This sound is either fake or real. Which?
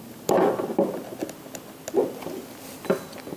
real